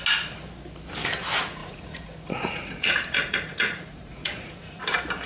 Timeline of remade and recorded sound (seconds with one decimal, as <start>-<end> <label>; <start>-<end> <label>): 0.0-1.6 recorded; 1.6-4.8 remade; 4.8-5.3 recorded